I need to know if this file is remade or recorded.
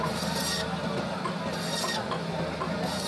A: recorded